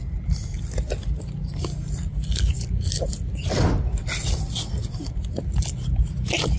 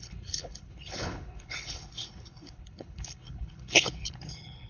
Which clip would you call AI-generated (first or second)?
second